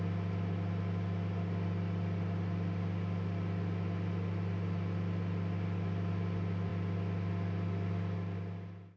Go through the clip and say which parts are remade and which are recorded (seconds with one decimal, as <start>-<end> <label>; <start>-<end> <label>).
0.0-9.0 recorded